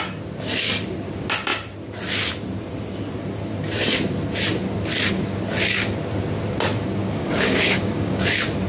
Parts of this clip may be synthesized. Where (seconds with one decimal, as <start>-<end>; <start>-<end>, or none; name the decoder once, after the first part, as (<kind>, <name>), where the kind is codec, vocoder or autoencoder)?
7.0-8.2 (codec, DAC)

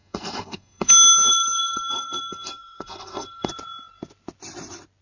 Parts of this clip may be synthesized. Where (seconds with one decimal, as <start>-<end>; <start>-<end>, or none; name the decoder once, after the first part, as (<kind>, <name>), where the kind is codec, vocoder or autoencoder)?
0.0-0.9 (codec, SNAC); 1.3-3.5

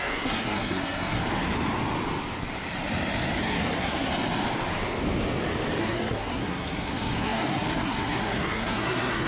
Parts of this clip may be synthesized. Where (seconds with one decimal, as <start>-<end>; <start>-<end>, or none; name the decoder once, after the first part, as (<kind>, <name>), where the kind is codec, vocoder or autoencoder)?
0.0-1.2 (codec, SNAC); 3.4-4.1; 5.8-9.3